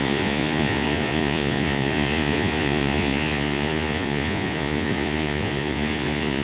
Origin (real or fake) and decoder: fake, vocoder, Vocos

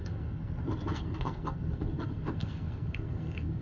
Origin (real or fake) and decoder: fake, codec, SNAC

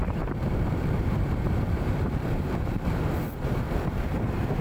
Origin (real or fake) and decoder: fake, vocoder, BigVGAN v2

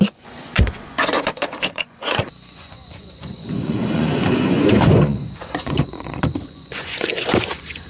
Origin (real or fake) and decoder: fake, vocoder, Vocos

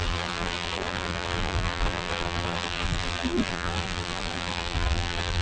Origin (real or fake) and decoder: fake, vocoder, BigVGAN v2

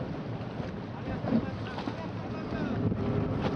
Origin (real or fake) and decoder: real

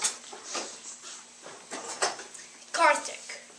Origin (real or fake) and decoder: real